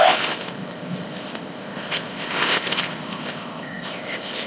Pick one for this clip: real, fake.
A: fake